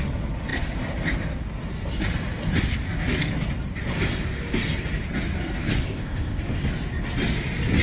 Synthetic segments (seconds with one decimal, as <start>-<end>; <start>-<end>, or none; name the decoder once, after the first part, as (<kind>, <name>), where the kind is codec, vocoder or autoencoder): 5.8-6.4 (codec, ZipCodec)